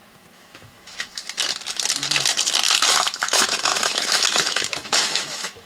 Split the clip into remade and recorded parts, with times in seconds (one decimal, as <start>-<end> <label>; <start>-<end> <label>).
0.0-1.2 remade; 1.2-2.9 recorded; 2.9-5.7 remade